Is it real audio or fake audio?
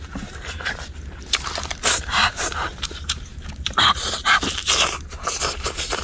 fake